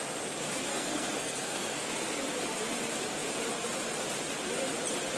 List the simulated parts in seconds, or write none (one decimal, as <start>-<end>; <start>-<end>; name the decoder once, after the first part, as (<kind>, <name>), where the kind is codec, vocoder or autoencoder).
0.7-1.9 (codec, SNAC)